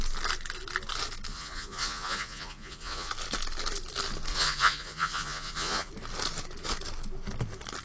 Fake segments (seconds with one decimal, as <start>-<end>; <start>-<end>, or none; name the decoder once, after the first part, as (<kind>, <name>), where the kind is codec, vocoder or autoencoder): 1.3-3.1 (vocoder, Vocos); 4.3-5.9

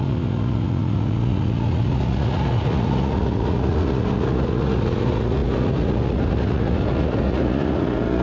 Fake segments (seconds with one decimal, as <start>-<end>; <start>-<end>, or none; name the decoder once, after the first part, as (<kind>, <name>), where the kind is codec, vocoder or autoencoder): 0.0-8.2 (vocoder, Vocos)

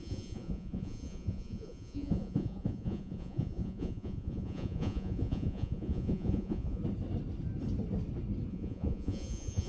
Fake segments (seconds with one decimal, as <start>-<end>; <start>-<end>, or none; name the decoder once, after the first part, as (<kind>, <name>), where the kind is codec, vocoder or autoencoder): 0.0-6.8 (vocoder, Vocos); 8.5-9.7

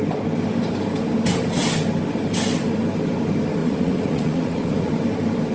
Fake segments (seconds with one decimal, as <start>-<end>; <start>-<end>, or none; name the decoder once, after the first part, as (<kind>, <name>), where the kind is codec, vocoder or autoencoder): 3.6-4.9 (vocoder, Vocos)

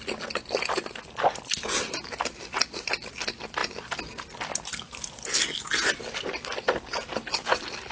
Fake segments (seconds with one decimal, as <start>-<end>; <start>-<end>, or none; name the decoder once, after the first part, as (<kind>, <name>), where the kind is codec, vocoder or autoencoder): none

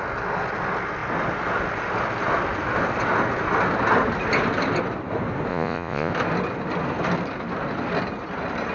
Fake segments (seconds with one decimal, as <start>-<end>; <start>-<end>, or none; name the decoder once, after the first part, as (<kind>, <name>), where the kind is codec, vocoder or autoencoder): 5.5-6.1 (vocoder, Vocos)

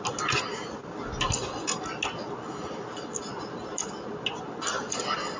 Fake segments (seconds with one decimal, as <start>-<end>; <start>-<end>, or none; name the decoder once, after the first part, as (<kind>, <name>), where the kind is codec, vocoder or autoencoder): none

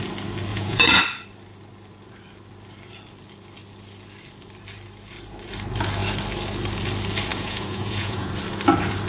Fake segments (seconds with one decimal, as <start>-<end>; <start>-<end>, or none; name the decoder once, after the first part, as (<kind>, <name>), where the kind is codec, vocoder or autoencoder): 0.5-1.0 (vocoder, Vocos); 7.3-8.3